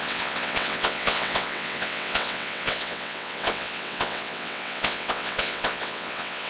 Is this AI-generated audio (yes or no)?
yes